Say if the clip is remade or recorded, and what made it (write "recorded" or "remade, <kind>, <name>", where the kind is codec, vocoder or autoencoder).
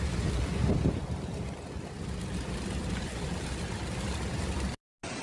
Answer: recorded